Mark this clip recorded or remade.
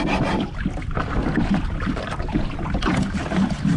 recorded